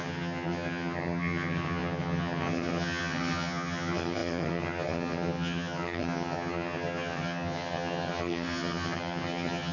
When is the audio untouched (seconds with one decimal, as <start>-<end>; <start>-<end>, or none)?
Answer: none